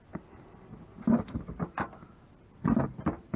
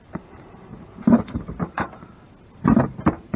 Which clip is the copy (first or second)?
second